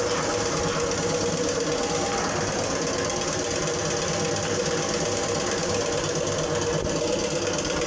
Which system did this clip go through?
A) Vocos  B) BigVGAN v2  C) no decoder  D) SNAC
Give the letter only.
C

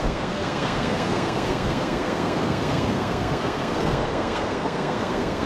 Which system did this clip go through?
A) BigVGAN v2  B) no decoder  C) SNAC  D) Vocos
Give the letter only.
C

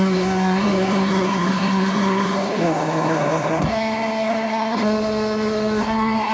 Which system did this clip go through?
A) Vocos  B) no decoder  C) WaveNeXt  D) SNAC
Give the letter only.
D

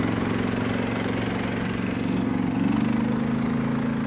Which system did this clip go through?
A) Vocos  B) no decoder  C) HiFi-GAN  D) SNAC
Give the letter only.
B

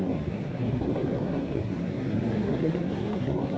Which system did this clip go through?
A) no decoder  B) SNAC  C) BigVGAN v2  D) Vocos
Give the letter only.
B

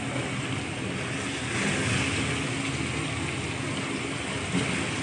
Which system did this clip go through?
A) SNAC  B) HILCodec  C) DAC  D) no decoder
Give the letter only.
D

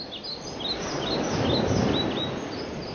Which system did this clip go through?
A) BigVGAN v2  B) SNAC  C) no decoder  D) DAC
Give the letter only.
C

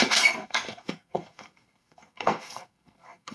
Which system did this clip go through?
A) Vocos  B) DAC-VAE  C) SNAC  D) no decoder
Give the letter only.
C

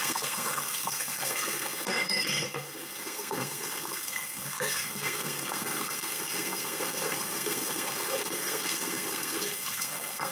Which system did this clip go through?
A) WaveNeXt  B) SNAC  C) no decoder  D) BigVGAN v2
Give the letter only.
B